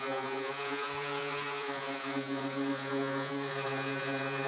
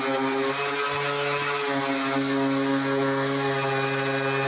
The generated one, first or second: first